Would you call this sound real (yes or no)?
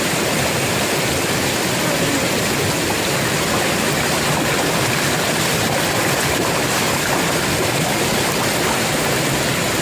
yes